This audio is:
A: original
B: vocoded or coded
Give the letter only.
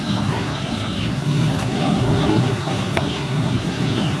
B